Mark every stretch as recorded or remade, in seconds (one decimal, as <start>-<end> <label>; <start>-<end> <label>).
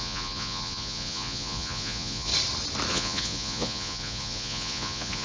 0.0-2.3 remade; 2.3-2.9 recorded; 2.9-5.2 remade